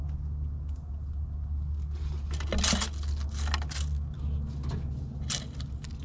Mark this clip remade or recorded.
recorded